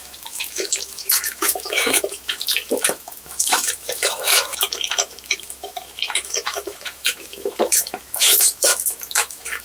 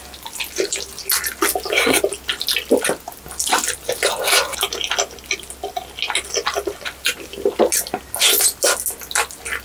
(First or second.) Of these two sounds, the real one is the second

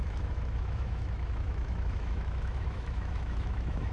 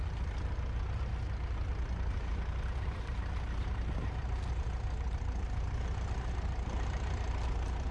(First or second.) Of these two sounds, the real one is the second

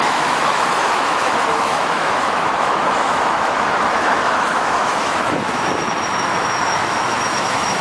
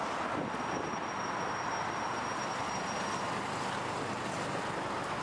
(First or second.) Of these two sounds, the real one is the second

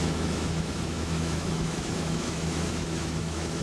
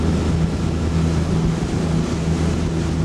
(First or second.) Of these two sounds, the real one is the second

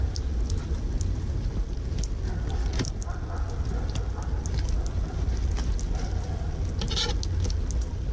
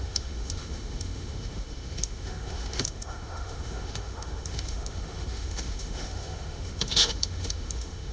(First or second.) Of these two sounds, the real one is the first